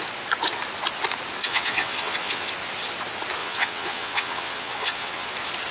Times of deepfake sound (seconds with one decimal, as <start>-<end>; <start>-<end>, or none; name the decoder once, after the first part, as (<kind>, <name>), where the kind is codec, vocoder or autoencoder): 1.4-2.5 (vocoder, WaveNeXt); 3.4-5.3